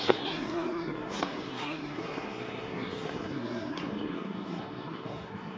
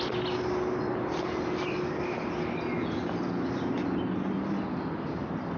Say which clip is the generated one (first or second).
first